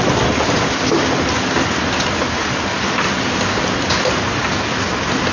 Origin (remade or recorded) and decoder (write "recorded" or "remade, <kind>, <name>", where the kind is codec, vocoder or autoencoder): recorded